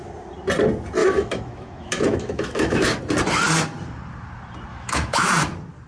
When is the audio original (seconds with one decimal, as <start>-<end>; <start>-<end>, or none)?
0.0-1.0; 3.0-4.7; 5.3-5.9